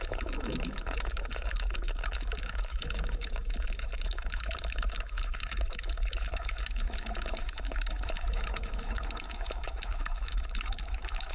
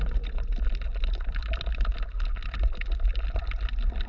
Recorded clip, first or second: second